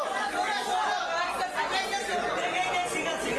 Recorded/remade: recorded